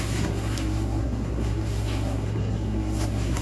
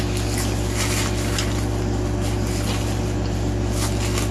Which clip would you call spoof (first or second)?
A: first